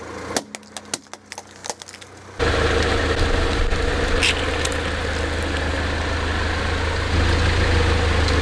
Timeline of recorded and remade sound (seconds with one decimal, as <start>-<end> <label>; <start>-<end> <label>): 0.0-8.4 recorded